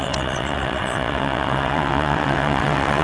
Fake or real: fake